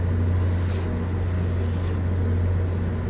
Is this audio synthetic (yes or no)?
no